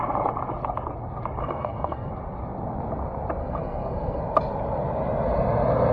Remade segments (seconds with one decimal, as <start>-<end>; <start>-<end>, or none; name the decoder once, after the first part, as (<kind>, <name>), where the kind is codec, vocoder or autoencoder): 1.4-2.1 (codec, SNAC); 3.4-4.2